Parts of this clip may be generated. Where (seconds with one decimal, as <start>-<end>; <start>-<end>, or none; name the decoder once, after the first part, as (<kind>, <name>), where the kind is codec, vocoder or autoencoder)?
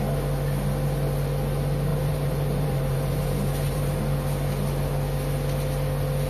1.9-4.0 (vocoder, BigVGAN v2)